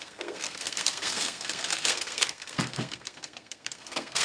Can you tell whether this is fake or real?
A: fake